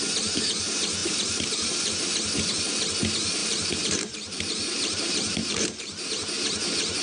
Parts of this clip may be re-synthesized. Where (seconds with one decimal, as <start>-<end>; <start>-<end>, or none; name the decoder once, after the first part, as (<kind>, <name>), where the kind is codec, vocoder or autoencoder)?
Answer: 1.0-1.9 (vocoder, BigVGAN v2); 3.4-6.0

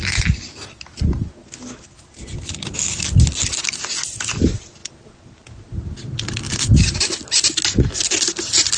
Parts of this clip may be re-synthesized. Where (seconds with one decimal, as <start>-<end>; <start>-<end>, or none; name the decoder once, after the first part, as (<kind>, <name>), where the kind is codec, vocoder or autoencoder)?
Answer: 4.8-8.8 (vocoder, BigVGAN v2)

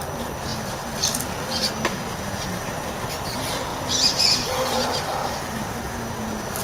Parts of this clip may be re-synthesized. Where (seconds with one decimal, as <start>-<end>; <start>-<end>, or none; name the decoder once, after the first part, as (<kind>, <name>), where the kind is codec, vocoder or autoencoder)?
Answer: 0.5-1.7 (vocoder, BigVGAN v2); 3.7-5.4

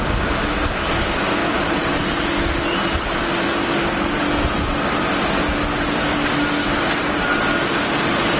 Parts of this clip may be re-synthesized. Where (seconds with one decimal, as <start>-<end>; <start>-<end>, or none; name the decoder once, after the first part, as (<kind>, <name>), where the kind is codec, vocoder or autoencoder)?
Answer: 1.4-1.9 (vocoder, BigVGAN v2)